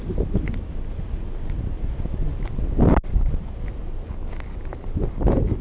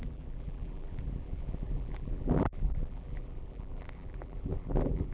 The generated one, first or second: second